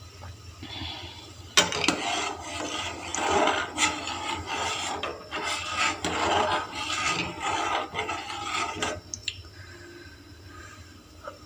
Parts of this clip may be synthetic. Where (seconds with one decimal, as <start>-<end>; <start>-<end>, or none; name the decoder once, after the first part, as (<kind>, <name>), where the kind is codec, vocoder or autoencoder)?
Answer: 9.2-9.7 (vocoder, BigVGAN v2)